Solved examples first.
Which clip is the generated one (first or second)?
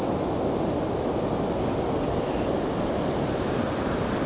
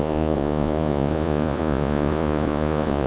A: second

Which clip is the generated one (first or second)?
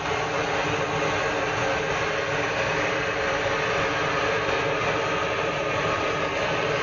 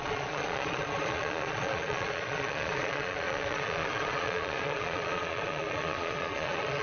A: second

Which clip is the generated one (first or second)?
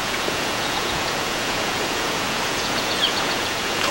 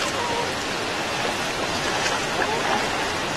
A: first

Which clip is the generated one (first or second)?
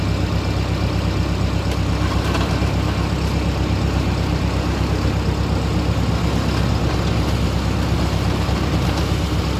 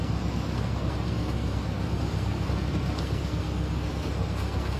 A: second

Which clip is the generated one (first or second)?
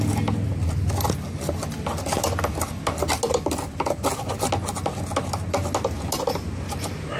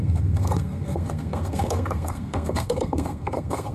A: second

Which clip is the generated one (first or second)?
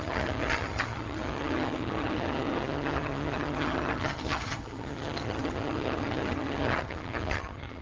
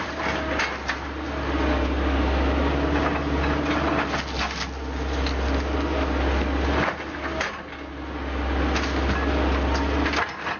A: first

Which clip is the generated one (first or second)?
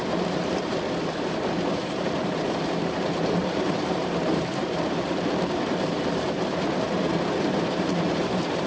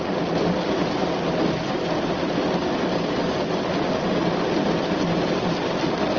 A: first